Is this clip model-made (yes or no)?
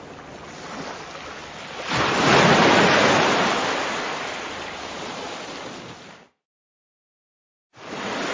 no